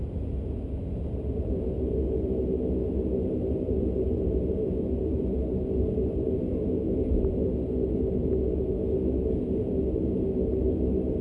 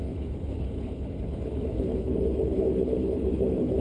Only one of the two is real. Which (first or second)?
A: first